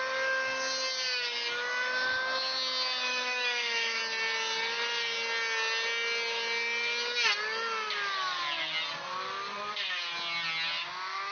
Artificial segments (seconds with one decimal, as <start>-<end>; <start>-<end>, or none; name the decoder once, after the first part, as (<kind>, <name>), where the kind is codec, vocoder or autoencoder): 3.1-4.0 (autoencoder, DAC-VAE)